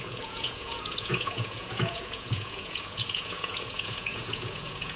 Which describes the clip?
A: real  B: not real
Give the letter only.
B